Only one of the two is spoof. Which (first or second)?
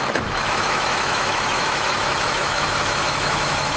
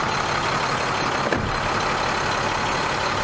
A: first